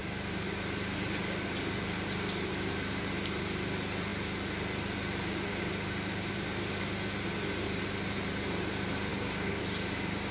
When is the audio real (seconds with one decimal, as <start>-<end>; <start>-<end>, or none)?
0.0-9.1; 9.6-10.3